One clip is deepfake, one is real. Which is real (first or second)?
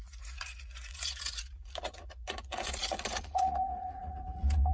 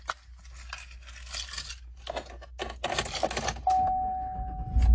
second